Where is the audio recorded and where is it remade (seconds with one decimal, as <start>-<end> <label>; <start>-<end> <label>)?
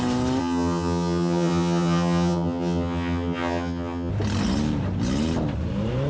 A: 0.0-0.4 recorded; 0.4-4.1 remade; 4.1-6.1 recorded